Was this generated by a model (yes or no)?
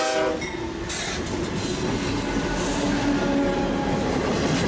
no